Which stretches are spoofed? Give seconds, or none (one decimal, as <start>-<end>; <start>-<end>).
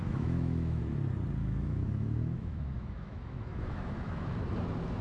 0.0-0.8; 1.4-4.4